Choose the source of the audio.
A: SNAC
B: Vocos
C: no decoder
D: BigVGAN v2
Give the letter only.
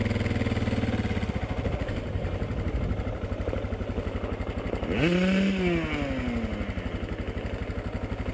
C